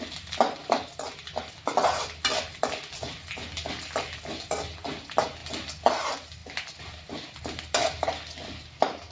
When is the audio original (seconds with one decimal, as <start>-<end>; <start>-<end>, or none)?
0.0-9.1

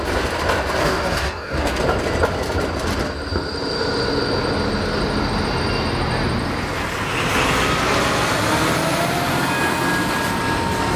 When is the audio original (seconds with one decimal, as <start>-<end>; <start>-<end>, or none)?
0.0-0.8; 1.8-11.0

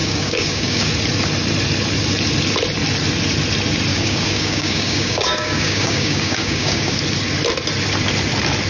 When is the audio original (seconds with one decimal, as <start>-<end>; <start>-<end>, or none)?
0.9-3.9; 7.0-8.7